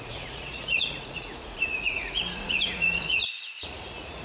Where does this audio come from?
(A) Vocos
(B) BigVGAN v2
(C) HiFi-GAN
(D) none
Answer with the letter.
A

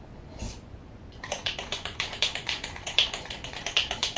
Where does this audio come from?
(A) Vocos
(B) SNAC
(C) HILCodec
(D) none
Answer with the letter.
A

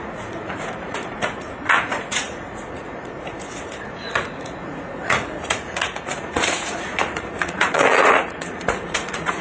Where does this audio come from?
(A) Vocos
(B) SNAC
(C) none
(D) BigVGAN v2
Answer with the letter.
A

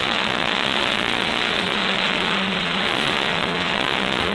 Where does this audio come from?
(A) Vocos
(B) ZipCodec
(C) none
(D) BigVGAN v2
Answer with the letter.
A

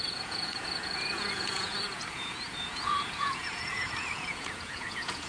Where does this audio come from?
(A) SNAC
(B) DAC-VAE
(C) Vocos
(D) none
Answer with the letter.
C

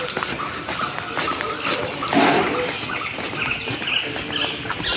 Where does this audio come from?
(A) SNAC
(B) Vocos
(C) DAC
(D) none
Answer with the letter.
D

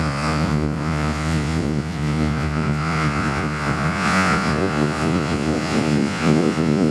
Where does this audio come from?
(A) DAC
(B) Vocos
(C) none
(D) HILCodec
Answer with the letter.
B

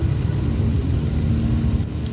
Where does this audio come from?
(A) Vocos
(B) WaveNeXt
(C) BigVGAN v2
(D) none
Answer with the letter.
D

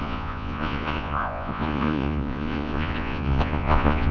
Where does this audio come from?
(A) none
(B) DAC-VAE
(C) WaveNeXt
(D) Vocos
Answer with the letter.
D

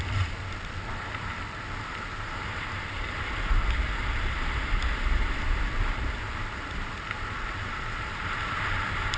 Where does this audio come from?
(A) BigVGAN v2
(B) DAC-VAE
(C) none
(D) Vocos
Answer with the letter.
C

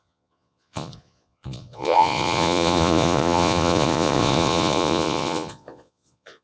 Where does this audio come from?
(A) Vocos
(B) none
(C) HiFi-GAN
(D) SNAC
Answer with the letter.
A